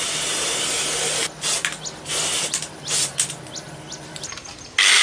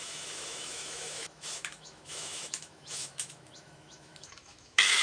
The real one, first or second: first